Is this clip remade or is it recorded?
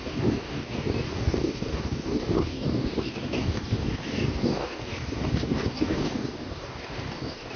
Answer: remade